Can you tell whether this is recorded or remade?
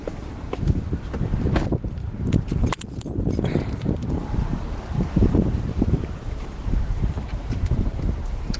remade